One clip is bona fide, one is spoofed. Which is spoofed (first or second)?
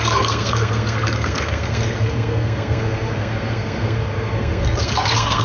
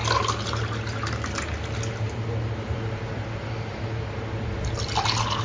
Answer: first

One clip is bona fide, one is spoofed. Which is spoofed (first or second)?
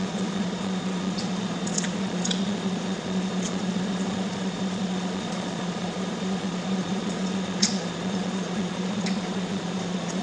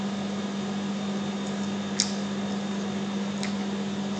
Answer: first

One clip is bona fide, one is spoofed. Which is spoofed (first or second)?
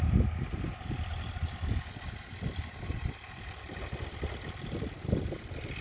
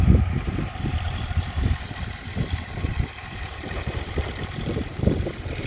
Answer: second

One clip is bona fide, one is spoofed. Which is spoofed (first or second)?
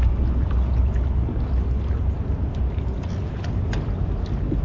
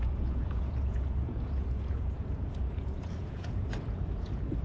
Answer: second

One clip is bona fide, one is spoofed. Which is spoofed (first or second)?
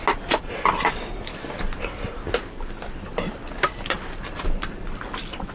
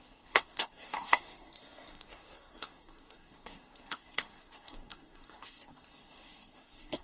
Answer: second